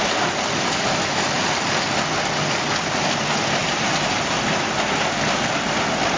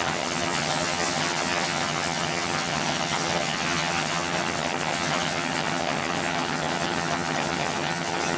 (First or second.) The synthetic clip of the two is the second